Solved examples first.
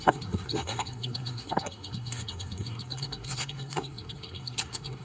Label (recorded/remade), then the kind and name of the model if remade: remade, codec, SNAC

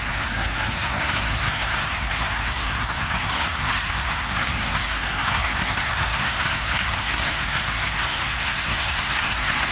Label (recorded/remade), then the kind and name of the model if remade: remade, codec, SNAC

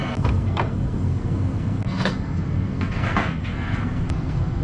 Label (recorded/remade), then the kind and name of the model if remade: remade, codec, SNAC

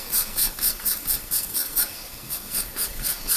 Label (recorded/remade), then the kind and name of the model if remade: remade, codec, SNAC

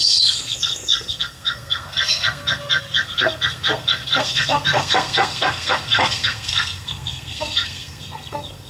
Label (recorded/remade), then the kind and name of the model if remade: remade, codec, SNAC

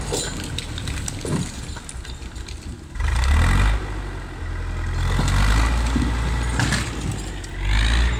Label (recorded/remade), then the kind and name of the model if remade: recorded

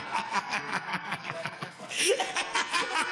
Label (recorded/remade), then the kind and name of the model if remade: remade, codec, SNAC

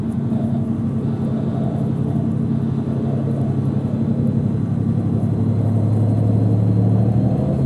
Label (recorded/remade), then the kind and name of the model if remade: recorded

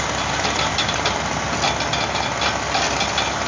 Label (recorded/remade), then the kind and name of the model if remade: recorded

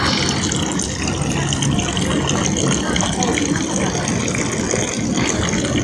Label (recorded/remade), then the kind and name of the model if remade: recorded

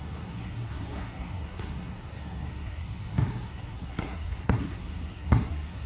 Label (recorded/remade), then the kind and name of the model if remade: remade, codec, SNAC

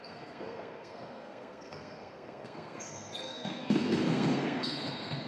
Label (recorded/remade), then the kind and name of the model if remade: remade, codec, SNAC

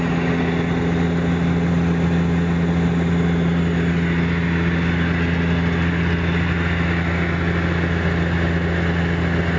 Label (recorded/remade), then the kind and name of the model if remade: recorded